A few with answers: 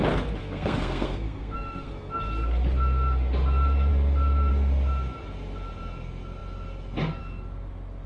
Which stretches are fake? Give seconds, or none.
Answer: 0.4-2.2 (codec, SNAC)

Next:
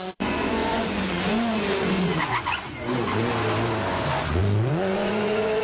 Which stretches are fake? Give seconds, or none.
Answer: 0.0-3.3 (vocoder, Vocos); 3.9-5.6

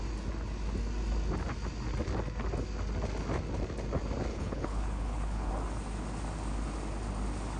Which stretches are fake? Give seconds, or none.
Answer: 4.3-5.5 (codec, HILCodec)

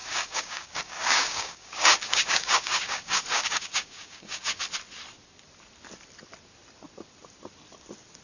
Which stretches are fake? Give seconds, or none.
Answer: 0.0-4.6 (codec, DAC)

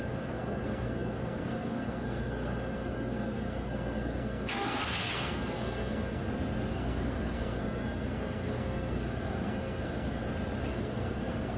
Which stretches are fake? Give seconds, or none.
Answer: 0.0-6.2 (codec, SNAC); 6.7-10.2; 10.7-11.6

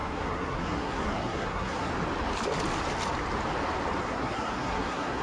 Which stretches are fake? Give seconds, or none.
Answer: 0.0-1.9 (codec, SNAC); 4.0-5.2